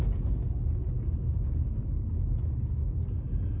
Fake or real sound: real